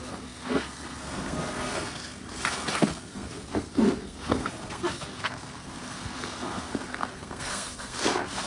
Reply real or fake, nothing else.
fake